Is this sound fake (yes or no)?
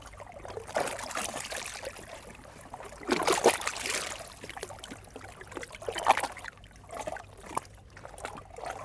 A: no